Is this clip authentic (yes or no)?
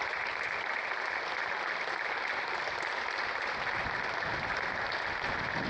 yes